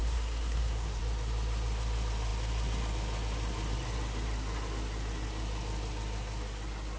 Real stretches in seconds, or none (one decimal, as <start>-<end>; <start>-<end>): 1.0-7.0